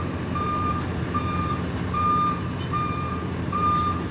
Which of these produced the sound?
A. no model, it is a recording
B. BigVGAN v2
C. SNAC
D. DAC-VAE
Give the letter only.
B